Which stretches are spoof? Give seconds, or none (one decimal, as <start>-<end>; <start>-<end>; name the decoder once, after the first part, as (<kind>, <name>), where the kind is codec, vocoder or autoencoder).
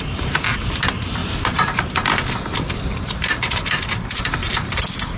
none